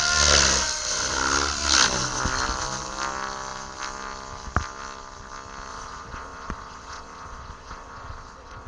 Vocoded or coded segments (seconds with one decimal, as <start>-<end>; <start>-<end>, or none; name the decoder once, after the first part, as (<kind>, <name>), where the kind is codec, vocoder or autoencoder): 5.7-8.7 (vocoder, Vocos)